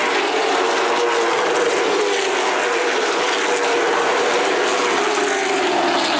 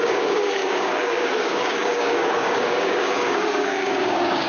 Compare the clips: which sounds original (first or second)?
first